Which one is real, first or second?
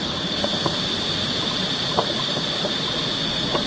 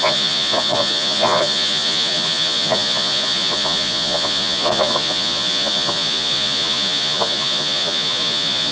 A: first